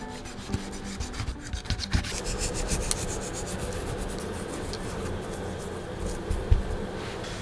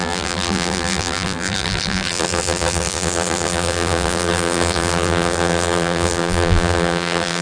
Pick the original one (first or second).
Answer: first